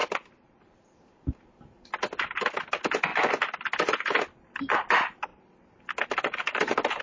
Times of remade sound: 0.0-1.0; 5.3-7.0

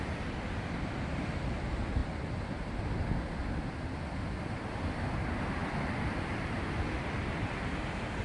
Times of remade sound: none

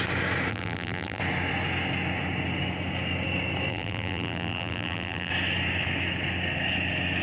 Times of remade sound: 0.5-1.2; 3.7-5.3

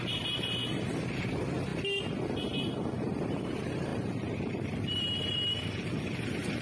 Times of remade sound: 0.0-0.6; 1.1-1.7; 3.4-6.6